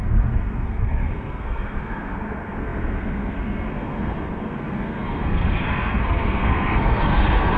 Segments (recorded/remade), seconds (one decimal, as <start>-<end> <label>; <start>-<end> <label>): 0.0-7.6 remade